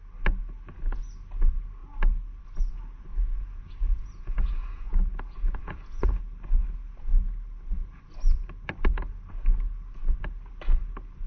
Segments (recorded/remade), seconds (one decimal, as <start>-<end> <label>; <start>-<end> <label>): 0.0-3.1 recorded; 3.1-6.2 remade; 6.2-11.3 recorded